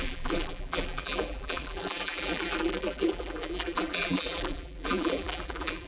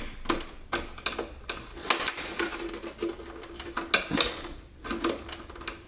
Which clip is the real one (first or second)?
second